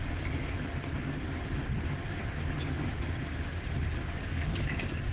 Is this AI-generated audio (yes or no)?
no